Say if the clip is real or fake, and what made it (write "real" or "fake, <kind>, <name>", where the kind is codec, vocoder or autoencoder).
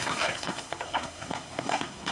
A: fake, codec, SNAC